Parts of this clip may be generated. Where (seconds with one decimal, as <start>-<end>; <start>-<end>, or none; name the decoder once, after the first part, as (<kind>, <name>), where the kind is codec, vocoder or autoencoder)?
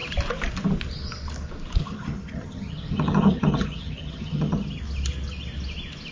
1.8-4.8 (vocoder, HiFi-GAN)